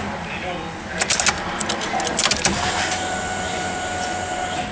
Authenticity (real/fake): real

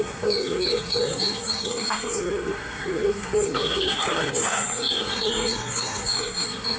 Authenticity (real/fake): fake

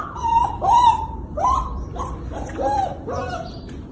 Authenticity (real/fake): fake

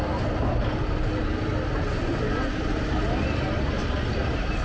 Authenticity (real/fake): real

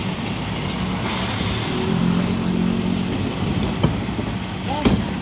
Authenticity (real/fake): real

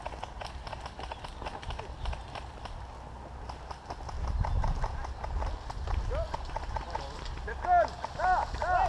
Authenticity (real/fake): real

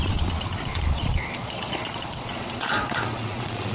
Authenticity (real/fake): fake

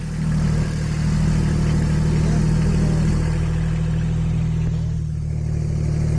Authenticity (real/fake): real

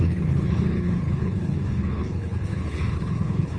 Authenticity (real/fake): fake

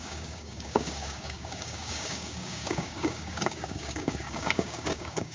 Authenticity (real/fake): fake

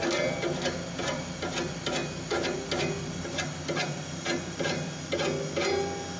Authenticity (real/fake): real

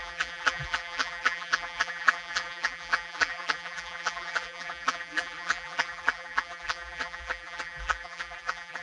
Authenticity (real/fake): fake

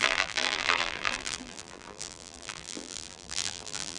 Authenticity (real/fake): fake